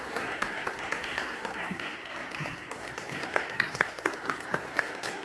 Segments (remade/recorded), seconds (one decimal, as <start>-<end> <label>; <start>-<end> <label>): 0.0-5.2 remade